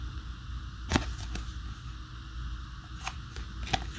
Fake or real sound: real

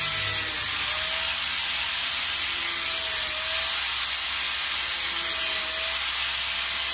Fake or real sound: real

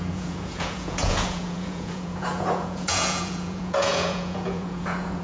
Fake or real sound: fake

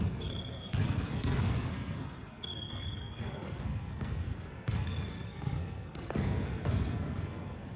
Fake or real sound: fake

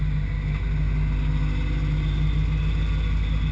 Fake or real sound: real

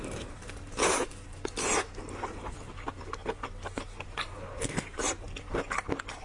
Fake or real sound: real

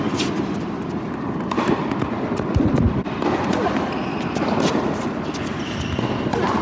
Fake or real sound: real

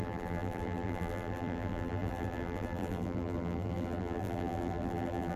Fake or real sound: fake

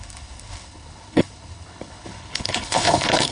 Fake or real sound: fake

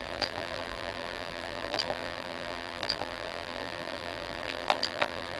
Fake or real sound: fake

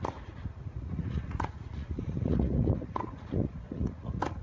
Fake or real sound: fake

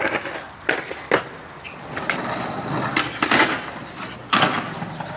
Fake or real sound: real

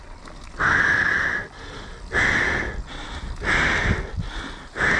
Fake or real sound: real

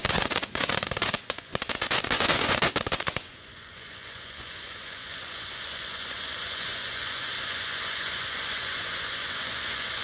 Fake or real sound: fake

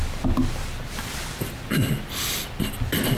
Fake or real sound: real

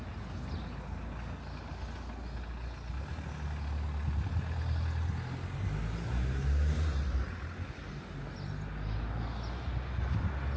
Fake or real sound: real